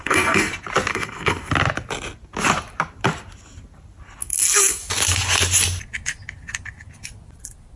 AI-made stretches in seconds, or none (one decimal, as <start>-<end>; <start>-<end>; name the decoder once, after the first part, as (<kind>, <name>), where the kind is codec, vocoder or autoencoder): 0.0-0.5 (codec, SNAC); 0.9-1.5; 4.2-4.8

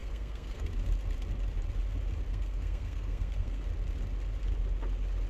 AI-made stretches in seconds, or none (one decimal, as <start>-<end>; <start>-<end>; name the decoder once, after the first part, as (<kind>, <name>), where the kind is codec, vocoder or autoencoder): 0.0-0.7 (codec, SNAC); 2.3-3.6

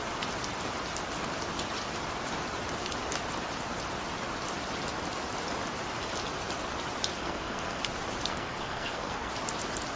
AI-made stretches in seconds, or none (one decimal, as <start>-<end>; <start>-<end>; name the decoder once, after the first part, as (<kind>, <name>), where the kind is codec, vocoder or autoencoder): 7.2-7.8 (codec, SNAC); 8.3-9.3

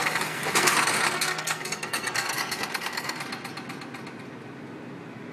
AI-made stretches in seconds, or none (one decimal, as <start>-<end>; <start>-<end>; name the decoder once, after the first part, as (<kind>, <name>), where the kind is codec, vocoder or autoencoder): 0.0-3.2 (codec, SNAC)

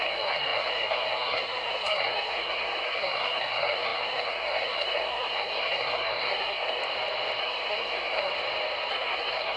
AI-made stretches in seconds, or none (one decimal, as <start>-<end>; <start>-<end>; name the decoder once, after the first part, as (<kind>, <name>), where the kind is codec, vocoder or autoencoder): 0.0-6.8 (codec, SNAC); 7.4-8.3; 8.9-9.6

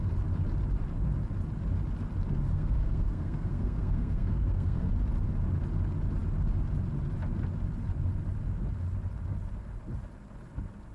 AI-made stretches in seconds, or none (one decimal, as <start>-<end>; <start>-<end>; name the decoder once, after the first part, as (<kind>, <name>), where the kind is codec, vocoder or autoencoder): 2.5-4.9 (codec, SNAC)